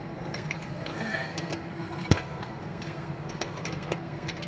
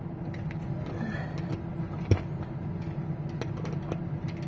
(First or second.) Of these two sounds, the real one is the second